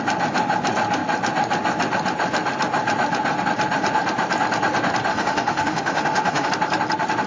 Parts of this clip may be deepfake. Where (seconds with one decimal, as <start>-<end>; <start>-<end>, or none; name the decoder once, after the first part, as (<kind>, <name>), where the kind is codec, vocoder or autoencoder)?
5.1-6.5 (autoencoder, DAC-VAE)